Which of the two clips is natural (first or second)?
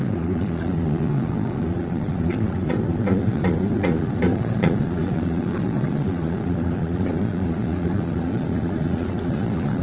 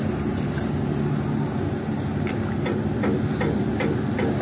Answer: second